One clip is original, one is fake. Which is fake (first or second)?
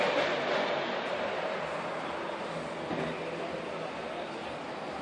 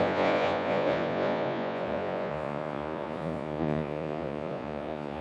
second